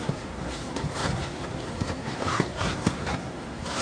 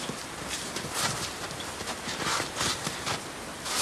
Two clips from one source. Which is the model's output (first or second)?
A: first